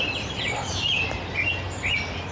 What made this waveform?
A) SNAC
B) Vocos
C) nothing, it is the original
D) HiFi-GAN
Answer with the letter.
C